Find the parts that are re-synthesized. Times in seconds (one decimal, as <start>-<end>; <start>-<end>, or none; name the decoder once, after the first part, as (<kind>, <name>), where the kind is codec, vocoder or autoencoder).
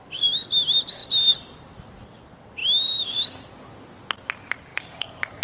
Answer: 1.0-1.9 (vocoder, BigVGAN v2); 4.7-5.4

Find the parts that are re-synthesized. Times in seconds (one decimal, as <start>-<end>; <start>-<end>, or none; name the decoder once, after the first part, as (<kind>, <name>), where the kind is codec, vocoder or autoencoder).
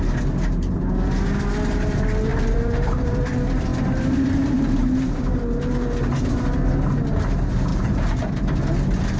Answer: 2.3-3.2 (vocoder, BigVGAN v2); 3.7-5.4; 7.7-8.3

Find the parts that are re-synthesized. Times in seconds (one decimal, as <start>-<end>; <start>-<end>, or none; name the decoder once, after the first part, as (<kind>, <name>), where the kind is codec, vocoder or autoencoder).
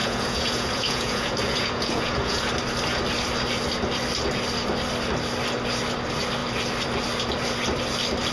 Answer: 0.0-2.4 (vocoder, Vocos)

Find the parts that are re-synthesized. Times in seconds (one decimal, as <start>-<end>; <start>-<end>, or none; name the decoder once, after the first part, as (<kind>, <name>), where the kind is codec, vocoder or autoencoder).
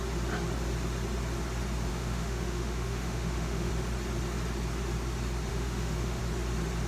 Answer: 1.9-3.7 (autoencoder, DAC-VAE); 5.5-6.2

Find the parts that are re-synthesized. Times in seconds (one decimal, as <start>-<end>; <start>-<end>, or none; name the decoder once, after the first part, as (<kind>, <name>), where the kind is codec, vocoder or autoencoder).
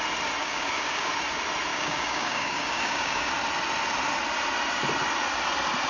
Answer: 0.4-1.1 (codec, DAC); 1.7-3.3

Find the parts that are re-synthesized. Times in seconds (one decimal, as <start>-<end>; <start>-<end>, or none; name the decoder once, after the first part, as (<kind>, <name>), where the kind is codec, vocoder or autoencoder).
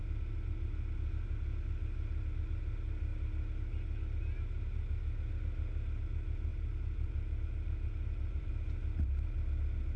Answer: 6.5-8.5 (vocoder, BigVGAN v2)